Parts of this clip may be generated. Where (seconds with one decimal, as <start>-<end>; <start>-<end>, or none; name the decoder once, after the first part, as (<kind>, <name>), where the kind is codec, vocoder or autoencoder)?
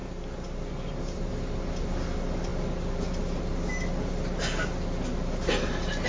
none